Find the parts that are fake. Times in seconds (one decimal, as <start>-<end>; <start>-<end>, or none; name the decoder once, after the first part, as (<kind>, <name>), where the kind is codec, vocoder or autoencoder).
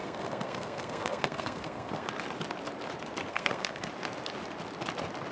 0.0-2.1 (codec, SNAC); 3.3-3.9